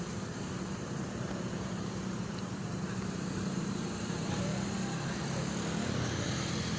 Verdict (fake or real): fake